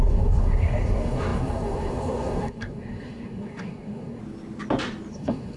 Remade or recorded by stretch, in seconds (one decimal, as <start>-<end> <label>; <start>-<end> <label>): 0.0-4.2 remade; 4.2-5.1 recorded; 5.1-5.6 remade